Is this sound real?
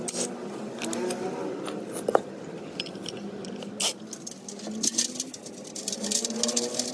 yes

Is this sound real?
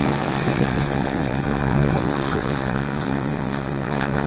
no